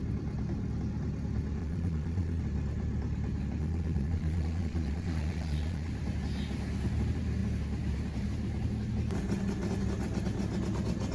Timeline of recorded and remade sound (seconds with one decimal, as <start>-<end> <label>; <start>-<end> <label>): 0.0-1.6 recorded; 1.6-2.4 remade; 2.4-3.6 recorded; 3.6-5.9 remade; 5.9-11.1 recorded